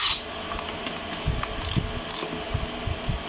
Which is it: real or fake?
real